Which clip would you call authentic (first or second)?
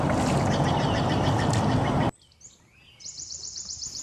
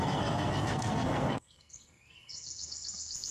first